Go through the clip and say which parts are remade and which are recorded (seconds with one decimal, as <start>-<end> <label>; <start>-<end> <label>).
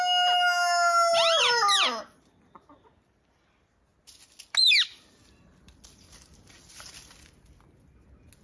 0.0-8.4 recorded